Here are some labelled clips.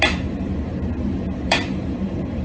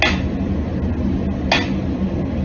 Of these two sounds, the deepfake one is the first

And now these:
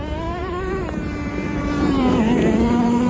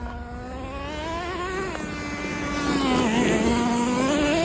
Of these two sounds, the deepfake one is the first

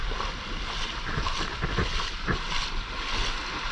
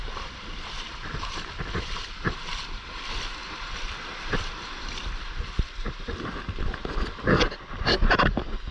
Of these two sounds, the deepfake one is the second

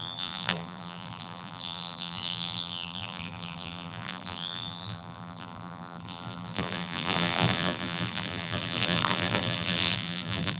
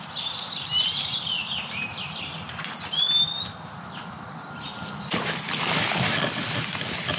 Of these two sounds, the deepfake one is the first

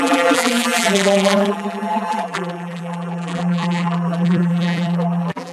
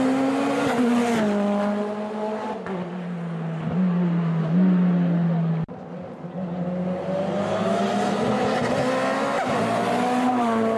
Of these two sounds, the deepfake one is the first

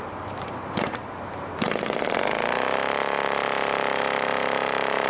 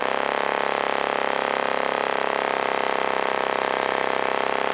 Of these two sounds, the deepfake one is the first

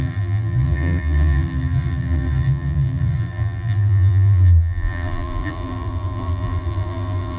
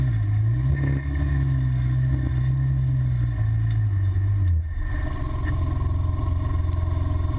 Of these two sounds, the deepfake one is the first